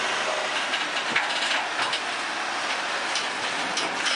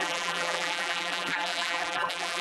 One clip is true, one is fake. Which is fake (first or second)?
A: second